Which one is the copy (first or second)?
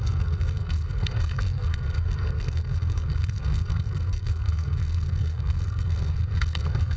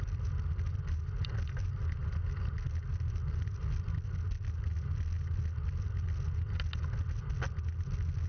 first